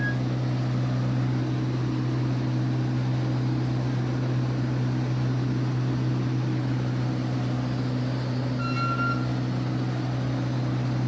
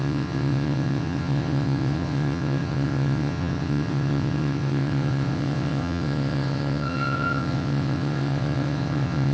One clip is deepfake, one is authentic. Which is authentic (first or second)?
first